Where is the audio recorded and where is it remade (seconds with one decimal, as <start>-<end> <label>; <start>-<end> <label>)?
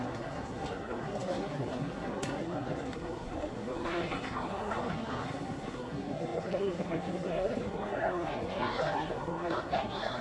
0.0-10.2 remade